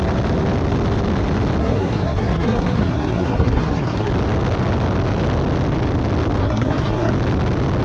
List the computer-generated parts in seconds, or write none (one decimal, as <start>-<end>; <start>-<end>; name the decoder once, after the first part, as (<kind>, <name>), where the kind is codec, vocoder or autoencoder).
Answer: 1.6-4.1 (codec, SNAC); 6.4-7.1